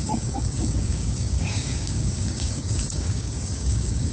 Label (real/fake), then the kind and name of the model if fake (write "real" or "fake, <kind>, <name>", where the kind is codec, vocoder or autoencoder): fake, codec, DAC